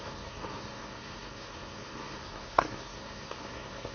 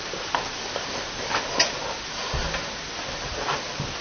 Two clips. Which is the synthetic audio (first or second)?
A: first